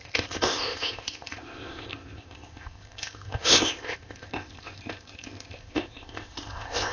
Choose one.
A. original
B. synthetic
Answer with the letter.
B